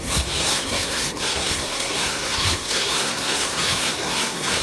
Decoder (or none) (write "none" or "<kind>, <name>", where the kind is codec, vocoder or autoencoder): codec, SNAC